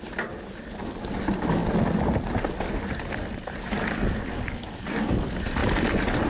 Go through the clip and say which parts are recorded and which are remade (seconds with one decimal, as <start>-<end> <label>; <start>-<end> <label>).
0.0-6.3 recorded